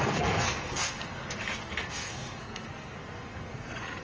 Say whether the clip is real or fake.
fake